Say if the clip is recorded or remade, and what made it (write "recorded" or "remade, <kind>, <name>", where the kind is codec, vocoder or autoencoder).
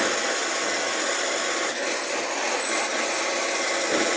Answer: recorded